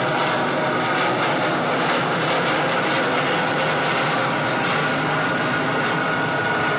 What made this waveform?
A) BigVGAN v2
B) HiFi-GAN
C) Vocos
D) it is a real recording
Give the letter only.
D